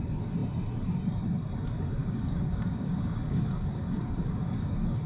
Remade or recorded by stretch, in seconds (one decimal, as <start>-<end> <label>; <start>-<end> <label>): 0.0-2.0 recorded; 2.0-5.1 remade